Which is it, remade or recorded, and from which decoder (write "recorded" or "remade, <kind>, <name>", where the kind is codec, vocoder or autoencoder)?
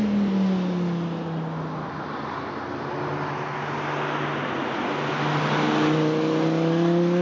recorded